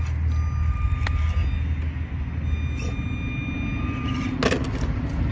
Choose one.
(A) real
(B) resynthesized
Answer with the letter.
A